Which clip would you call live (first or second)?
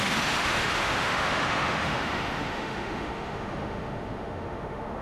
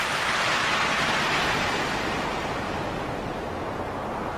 second